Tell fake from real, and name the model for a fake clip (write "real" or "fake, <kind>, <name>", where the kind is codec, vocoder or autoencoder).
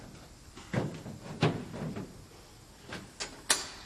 real